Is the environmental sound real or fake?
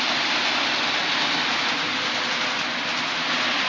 real